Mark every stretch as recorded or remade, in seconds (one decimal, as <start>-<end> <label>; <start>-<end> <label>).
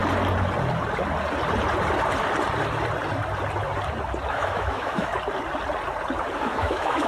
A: 0.0-4.3 recorded; 4.3-5.1 remade; 5.1-6.4 recorded; 6.4-7.1 remade